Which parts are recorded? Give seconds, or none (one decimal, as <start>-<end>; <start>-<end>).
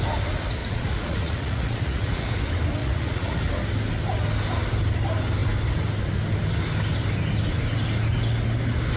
0.0-0.6; 2.3-2.8; 3.4-9.0